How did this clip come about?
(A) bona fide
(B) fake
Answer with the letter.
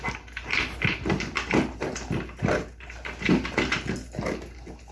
A